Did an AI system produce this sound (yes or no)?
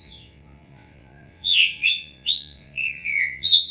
yes